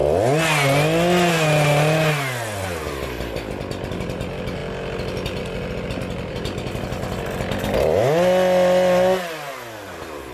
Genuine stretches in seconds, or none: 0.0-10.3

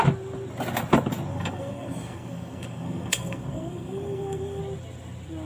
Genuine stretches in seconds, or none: 0.0-1.3; 4.6-5.5

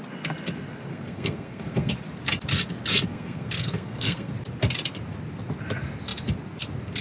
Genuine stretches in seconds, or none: 0.0-0.9; 1.9-3.1; 4.3-7.0

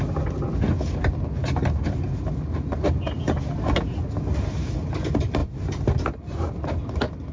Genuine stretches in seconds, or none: 0.0-7.3

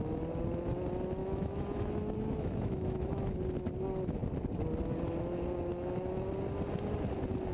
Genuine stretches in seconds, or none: 0.0-1.2; 3.4-5.7; 6.3-7.5

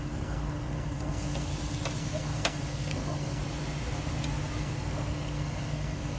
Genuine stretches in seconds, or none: 1.5-2.0; 3.4-4.6

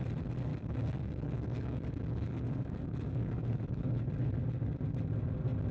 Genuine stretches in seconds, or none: 0.0-0.5; 3.9-5.7

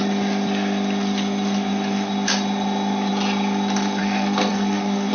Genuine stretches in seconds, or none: 0.0-4.0